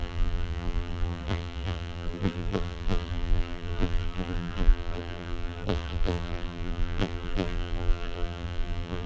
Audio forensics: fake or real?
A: fake